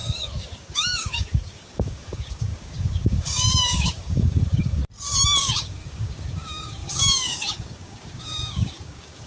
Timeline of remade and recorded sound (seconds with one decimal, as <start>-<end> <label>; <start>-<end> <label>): 0.0-4.8 remade; 4.8-5.4 recorded; 5.4-9.3 remade

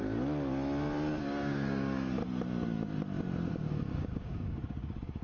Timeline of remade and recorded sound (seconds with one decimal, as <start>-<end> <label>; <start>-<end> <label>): 0.0-1.2 recorded; 1.2-2.2 remade; 2.2-3.5 recorded; 3.5-5.2 remade

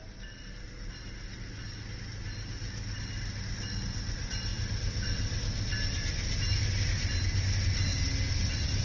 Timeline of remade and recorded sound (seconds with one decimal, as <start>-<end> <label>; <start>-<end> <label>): 0.0-8.8 recorded